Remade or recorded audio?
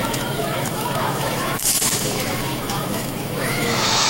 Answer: remade